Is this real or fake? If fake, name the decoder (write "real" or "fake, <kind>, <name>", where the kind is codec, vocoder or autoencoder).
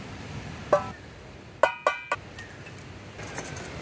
real